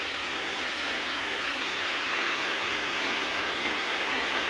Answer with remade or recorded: remade